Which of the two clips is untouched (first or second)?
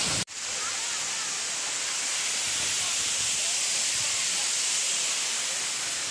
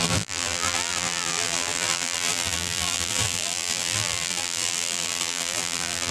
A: first